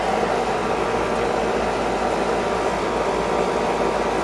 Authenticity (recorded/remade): recorded